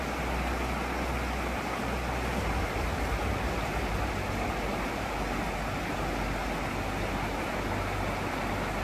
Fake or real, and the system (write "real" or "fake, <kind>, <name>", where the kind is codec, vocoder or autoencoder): real